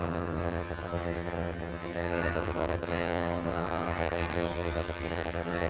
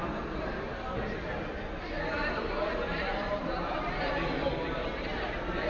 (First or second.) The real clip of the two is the second